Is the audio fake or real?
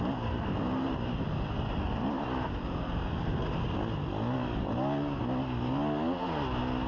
real